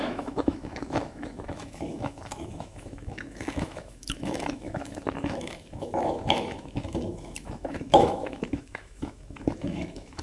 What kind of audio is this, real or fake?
fake